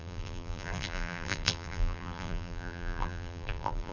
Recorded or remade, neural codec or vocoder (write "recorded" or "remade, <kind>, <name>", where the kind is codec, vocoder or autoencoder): remade, vocoder, BigVGAN v2